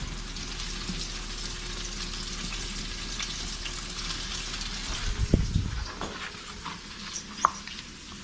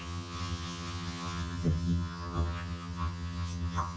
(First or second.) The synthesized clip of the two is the second